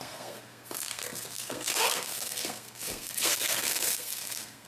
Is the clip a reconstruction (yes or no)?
yes